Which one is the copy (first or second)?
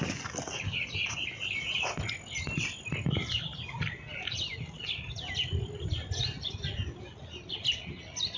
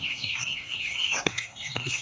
second